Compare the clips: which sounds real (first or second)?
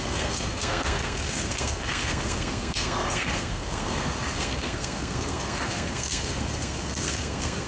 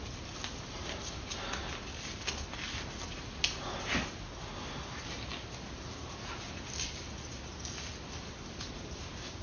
second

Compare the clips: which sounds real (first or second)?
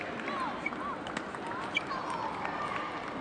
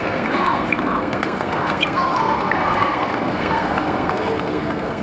first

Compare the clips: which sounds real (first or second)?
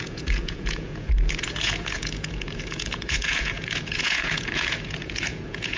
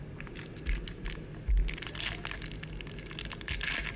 second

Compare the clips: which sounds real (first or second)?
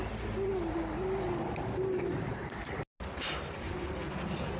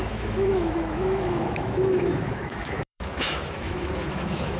first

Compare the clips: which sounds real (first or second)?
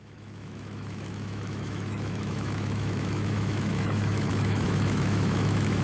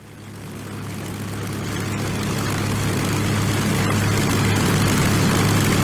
second